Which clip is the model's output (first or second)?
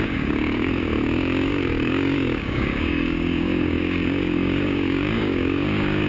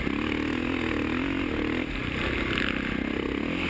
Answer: first